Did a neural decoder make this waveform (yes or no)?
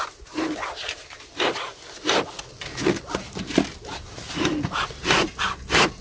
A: no